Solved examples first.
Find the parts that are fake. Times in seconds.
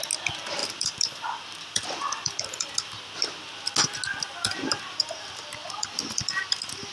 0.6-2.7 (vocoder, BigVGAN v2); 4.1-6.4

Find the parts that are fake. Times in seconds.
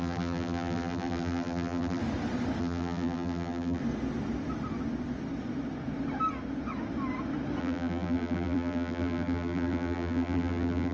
0.0-2.0 (vocoder, BigVGAN v2); 2.6-3.8; 7.6-10.9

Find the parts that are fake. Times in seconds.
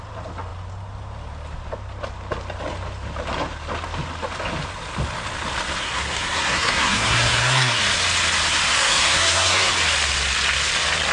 5.8-7.8 (codec, SNAC); 8.8-9.7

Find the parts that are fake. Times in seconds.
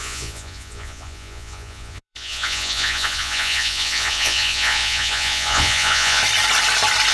0.0-6.2 (vocoder, Vocos)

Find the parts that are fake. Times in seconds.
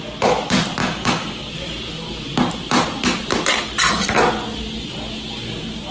0.8-1.5 (codec, DAC)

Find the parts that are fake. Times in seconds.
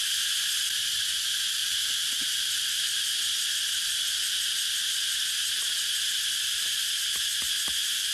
1.6-6.5 (vocoder, BigVGAN v2)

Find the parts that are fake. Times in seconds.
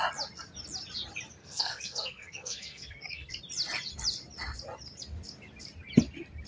1.4-3.3 (codec, SNAC)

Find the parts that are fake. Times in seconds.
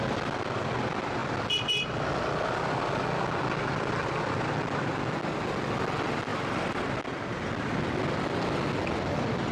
none